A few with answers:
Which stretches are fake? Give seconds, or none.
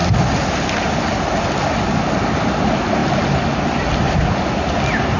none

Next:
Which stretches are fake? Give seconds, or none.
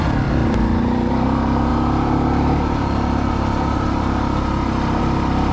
0.0-0.4 (vocoder, BigVGAN v2); 1.1-1.7; 5.0-5.5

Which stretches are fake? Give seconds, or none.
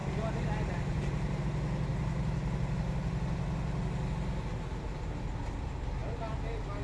0.0-1.4 (vocoder, BigVGAN v2)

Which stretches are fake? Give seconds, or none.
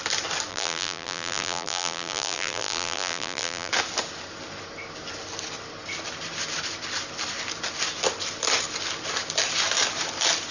0.5-3.7 (vocoder, BigVGAN v2)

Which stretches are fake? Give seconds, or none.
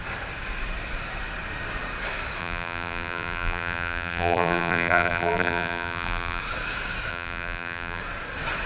2.4-6.4 (vocoder, BigVGAN v2); 7.1-8.0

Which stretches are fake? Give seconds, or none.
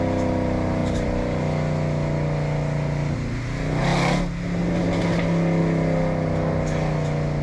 0.8-1.4 (vocoder, BigVGAN v2)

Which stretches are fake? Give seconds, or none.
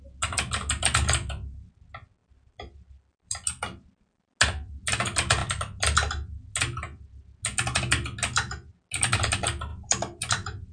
2.2-4.3 (vocoder, BigVGAN v2); 9.7-10.7